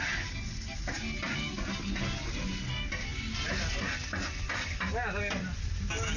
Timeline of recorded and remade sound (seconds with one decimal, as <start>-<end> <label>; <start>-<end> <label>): 0.0-6.2 recorded